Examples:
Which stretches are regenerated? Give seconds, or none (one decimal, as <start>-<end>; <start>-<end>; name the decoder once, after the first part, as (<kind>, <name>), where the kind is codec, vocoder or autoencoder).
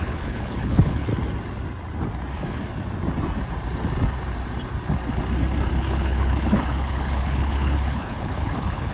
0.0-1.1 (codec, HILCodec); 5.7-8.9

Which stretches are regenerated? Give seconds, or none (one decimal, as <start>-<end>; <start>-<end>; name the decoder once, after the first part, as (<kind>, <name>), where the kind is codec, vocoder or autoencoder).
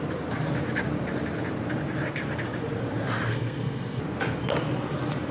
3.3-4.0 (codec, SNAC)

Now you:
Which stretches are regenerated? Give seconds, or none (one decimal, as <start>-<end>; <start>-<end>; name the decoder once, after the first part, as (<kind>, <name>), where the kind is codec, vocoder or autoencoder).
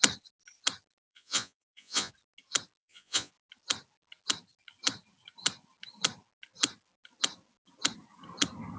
1.1-2.1 (vocoder, Vocos); 2.8-3.3